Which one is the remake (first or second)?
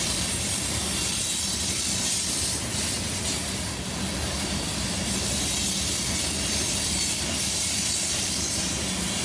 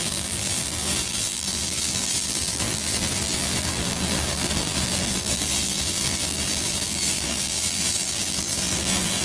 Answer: second